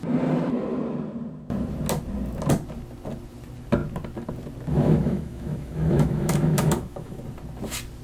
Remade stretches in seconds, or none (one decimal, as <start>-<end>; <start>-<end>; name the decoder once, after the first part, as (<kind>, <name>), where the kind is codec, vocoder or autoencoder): 4.7-7.2 (autoencoder, DAC-VAE)